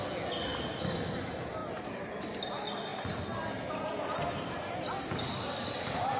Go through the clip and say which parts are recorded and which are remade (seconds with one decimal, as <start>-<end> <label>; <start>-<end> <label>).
0.0-1.6 recorded; 1.6-2.3 remade; 2.3-6.2 recorded